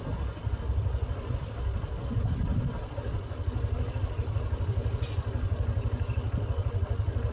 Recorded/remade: recorded